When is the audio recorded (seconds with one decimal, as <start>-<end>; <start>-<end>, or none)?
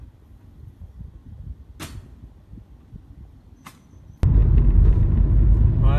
0.0-6.0